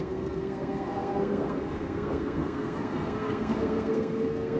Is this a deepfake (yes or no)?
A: yes